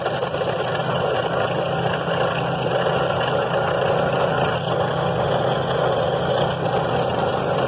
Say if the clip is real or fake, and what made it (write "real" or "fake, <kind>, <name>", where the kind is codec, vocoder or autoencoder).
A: real